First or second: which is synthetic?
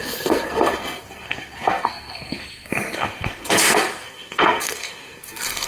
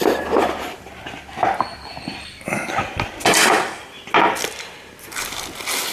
first